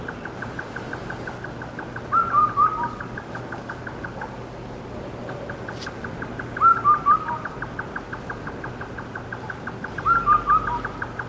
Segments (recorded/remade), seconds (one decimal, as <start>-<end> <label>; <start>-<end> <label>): 0.0-2.4 recorded; 2.4-4.9 remade; 4.9-11.3 recorded